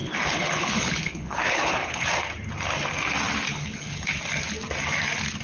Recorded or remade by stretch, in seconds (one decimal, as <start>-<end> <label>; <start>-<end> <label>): 0.0-2.1 remade; 2.1-3.5 recorded; 3.5-4.1 remade; 4.1-5.4 recorded